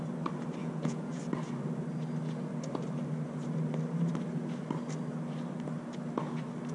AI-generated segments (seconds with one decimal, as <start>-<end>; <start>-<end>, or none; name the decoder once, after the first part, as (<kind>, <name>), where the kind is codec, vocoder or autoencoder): 0.6-1.2 (vocoder, Vocos)